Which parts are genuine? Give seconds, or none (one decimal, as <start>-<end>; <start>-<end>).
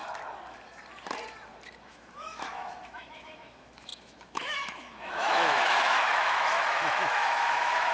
0.0-1.8